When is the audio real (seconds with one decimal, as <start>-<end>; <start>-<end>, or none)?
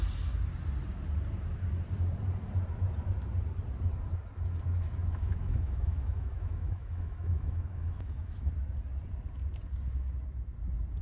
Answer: 0.0-5.0; 8.5-11.0